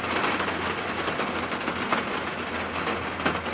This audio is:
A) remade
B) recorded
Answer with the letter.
B